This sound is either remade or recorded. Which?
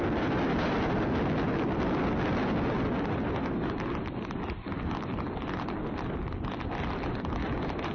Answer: recorded